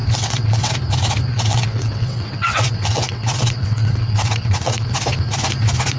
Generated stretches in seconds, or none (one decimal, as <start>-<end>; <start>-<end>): 0.0-0.7; 1.3-4.9